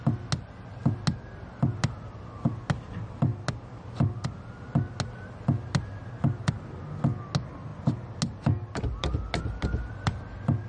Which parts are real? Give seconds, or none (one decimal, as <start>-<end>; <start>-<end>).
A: 0.0-10.7